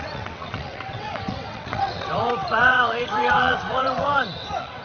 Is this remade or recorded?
remade